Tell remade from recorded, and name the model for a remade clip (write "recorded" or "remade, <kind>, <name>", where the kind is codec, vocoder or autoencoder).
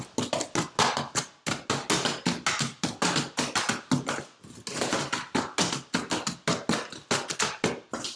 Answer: recorded